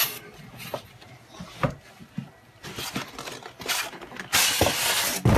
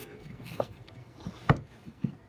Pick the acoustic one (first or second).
first